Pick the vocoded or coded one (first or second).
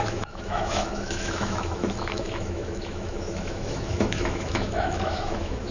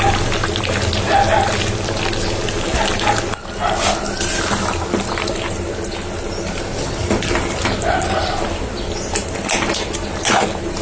first